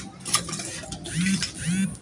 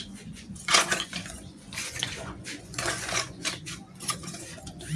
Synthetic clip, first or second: second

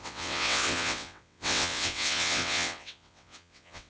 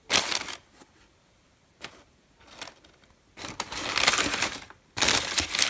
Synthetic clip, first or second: first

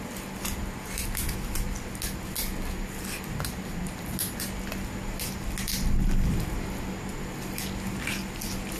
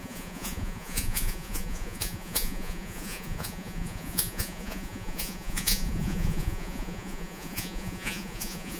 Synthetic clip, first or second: second